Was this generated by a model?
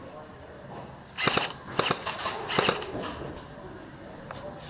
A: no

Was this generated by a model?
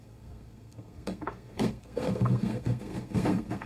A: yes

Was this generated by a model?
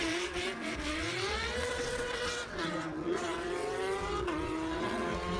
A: yes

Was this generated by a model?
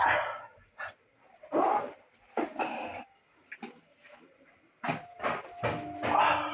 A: no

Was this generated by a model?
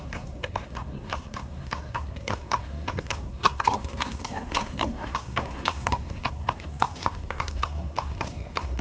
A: yes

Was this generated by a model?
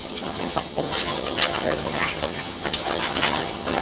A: yes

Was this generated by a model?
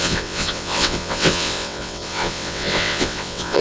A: yes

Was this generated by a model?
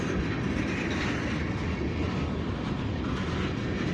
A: no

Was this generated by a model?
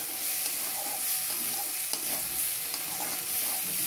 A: no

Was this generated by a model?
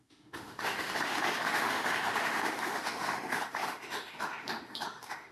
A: yes